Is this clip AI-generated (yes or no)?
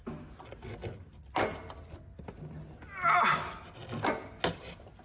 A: no